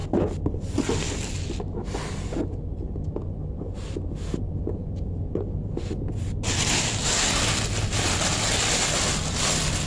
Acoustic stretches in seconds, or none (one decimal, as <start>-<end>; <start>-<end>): 0.0-9.9